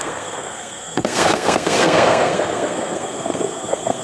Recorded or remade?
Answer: remade